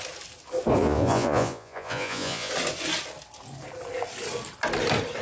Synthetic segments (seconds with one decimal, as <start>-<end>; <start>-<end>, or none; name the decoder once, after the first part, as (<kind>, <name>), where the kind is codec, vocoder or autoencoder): 0.8-2.5 (vocoder, Vocos)